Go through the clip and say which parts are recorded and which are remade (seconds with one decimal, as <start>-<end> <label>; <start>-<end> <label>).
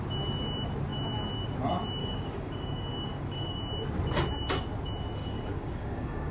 0.0-2.0 recorded; 2.0-3.6 remade; 3.6-5.2 recorded; 5.2-6.3 remade